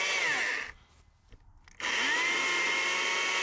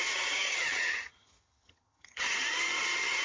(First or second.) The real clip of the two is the first